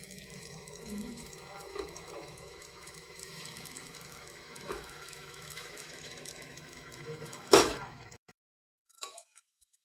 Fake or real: fake